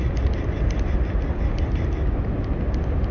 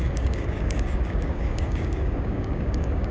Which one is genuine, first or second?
first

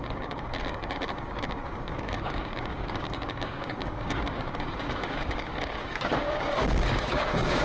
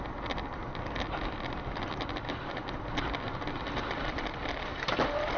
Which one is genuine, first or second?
second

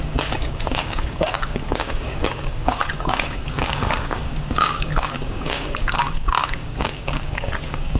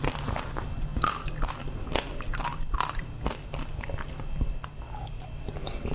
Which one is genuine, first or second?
second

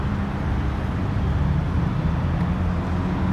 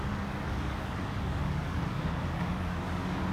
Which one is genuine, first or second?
first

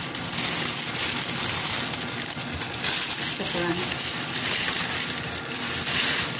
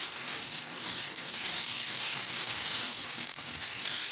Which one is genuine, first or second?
first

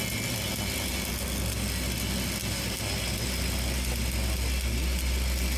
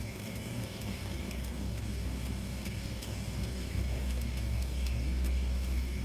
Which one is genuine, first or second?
first